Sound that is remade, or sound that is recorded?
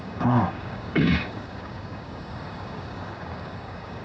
remade